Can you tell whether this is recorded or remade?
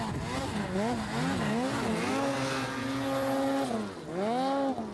recorded